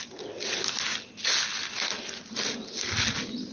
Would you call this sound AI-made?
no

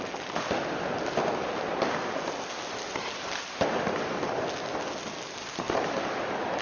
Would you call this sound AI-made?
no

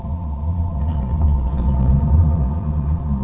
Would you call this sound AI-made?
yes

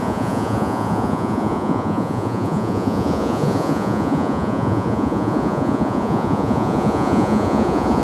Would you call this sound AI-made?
yes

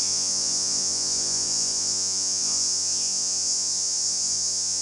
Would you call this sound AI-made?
yes